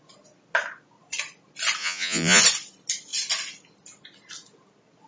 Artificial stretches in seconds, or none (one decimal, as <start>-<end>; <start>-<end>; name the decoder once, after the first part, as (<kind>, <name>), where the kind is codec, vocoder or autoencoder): 1.8-2.4 (vocoder, Vocos)